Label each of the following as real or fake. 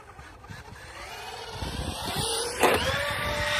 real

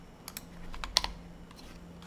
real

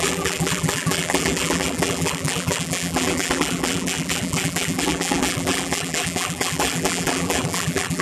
fake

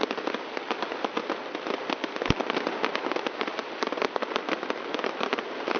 real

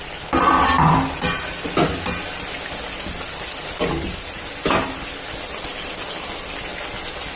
real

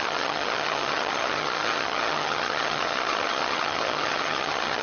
fake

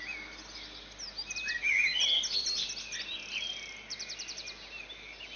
real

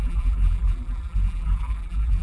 fake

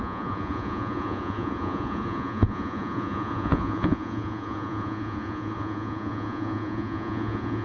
fake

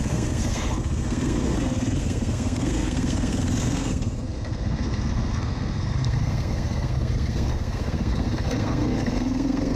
fake